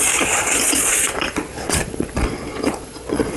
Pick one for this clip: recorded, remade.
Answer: remade